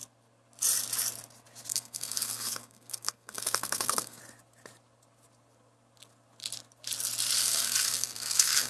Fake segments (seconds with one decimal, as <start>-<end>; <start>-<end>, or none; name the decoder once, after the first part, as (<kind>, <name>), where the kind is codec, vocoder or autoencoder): 1.7-4.2 (codec, SNAC); 7.4-8.7